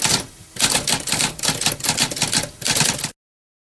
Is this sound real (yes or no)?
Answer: yes